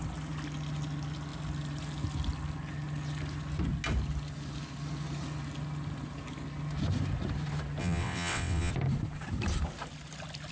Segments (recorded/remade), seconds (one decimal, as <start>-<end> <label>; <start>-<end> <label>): 0.0-7.8 recorded; 7.8-8.7 remade; 8.7-10.5 recorded